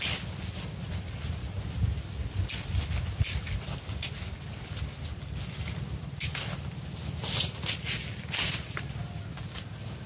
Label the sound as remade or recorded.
recorded